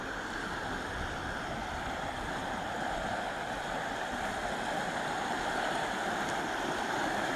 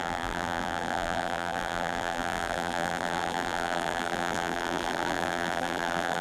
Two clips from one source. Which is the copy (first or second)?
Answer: second